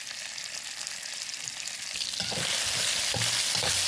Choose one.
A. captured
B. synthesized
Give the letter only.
A